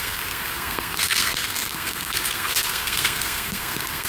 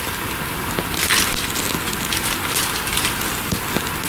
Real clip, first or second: second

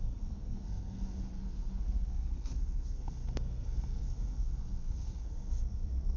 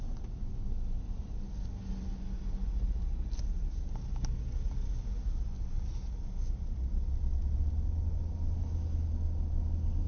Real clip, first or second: second